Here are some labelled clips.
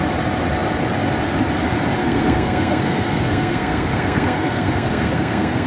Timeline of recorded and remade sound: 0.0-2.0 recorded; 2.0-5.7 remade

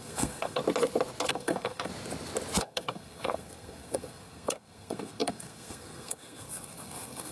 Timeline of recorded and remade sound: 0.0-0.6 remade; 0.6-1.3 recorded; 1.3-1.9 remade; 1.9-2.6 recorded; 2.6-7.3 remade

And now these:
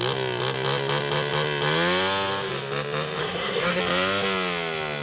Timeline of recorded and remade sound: 0.0-3.2 recorded; 3.2-3.8 remade; 3.8-5.0 recorded